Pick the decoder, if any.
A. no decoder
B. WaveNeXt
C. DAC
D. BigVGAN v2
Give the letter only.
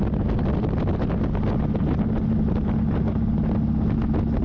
A